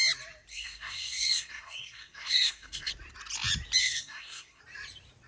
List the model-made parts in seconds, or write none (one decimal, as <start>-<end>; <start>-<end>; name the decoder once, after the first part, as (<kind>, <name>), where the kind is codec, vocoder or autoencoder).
0.5-2.9 (codec, SNAC); 3.8-4.6